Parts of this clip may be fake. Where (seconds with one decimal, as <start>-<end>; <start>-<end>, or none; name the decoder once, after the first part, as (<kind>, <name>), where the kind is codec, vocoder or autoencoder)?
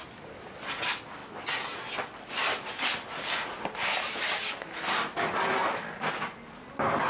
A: none